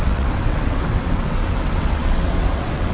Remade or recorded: remade